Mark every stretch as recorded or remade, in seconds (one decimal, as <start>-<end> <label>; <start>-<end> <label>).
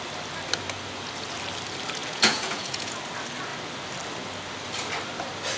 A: 0.0-2.0 recorded; 2.0-3.0 remade; 3.0-5.6 recorded